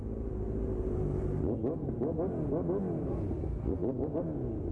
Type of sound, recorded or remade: recorded